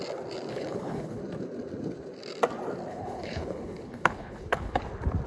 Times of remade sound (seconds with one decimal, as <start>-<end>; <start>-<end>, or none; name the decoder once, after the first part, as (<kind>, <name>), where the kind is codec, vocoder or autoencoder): 0.5-1.2 (codec, HILCodec); 2.9-4.8